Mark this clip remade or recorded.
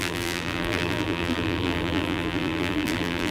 remade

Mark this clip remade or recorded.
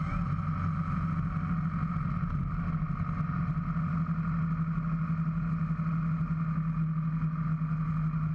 recorded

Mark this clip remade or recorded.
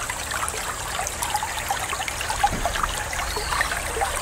recorded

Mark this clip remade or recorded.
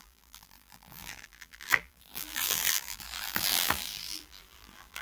remade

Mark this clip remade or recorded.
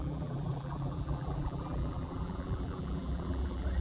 remade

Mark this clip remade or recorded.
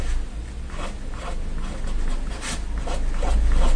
recorded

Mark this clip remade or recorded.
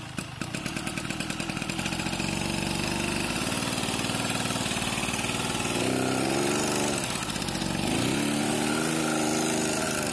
recorded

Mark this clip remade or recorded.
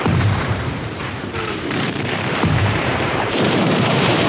remade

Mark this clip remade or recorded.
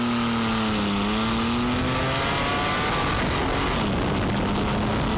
recorded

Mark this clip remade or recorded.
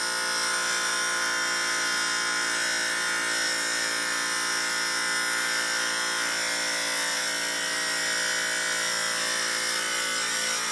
recorded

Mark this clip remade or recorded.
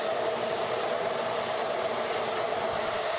remade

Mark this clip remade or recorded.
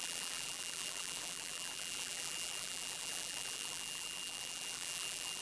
remade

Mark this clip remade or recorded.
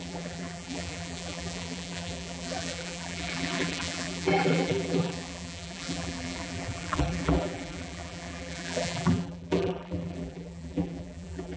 remade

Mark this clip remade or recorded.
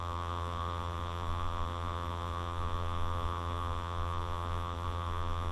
remade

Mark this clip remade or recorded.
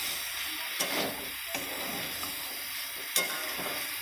recorded